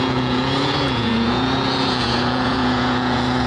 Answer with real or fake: fake